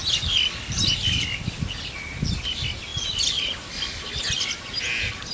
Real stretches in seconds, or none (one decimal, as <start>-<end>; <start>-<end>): 0.0-5.3